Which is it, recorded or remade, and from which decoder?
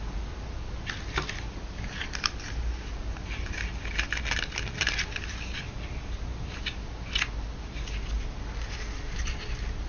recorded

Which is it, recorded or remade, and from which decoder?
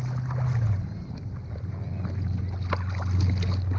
recorded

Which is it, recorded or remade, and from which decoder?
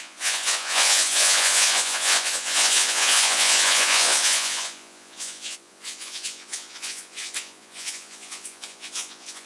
remade, vocoder, Vocos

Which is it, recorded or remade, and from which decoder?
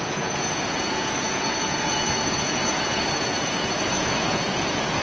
remade, vocoder, Vocos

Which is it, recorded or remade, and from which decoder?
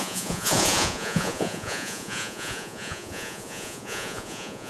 remade, vocoder, Vocos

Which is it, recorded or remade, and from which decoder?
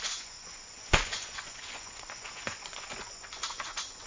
remade, vocoder, Vocos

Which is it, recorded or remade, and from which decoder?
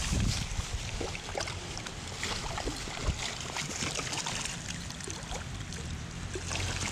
recorded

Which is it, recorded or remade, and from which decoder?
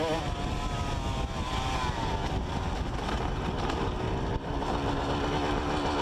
recorded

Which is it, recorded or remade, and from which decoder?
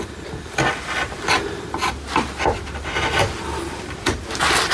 recorded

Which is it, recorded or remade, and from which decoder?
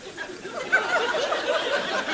recorded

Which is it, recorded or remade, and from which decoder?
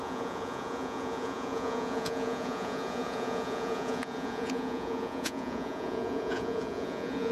remade, vocoder, Vocos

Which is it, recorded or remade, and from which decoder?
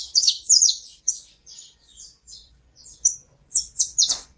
remade, vocoder, Vocos